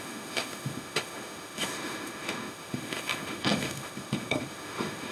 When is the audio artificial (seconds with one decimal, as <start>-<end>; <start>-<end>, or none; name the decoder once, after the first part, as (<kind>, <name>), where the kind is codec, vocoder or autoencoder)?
0.0-5.1 (autoencoder, DAC-VAE)